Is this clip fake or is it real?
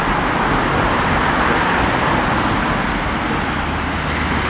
real